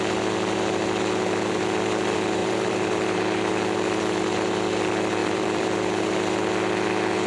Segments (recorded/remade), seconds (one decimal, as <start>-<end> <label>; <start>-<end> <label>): 0.0-2.4 recorded; 2.4-3.2 remade; 3.2-5.2 recorded; 5.2-5.9 remade; 5.9-7.3 recorded